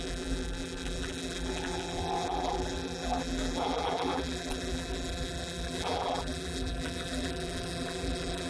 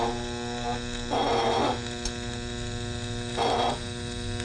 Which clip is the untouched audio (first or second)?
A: second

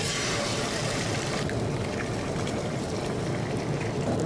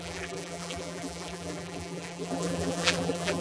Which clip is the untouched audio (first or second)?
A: first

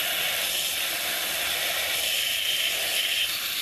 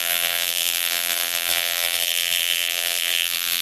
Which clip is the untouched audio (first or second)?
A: first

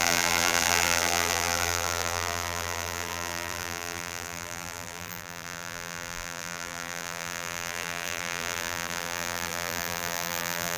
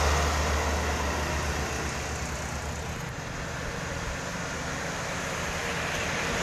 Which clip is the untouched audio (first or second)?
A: second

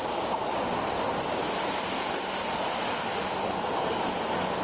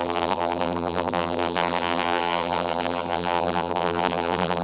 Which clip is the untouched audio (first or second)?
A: first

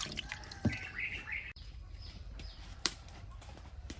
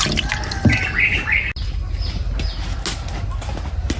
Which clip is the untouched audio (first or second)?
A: second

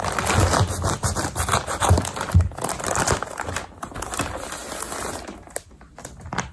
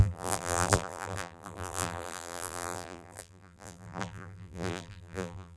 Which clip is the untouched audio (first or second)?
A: first